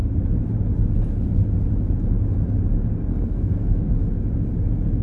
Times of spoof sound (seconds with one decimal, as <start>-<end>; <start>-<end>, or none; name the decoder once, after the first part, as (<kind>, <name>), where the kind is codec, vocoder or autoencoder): 3.1-3.9 (codec, SNAC)